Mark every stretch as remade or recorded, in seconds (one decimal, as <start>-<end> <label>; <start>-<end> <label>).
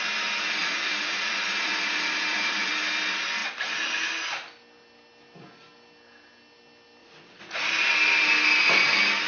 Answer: 0.0-0.6 recorded; 0.6-2.7 remade; 2.7-7.0 recorded; 7.0-7.7 remade; 7.7-9.3 recorded